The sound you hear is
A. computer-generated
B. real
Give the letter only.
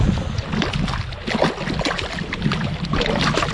B